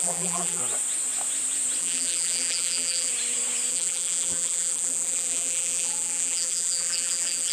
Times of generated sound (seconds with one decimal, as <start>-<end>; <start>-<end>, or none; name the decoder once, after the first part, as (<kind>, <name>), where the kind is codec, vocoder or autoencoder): 0.0-0.6 (vocoder, BigVGAN v2); 1.8-3.1; 3.7-7.5